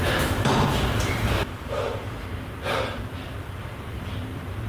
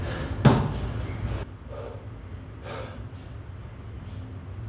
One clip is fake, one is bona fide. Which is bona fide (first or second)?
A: second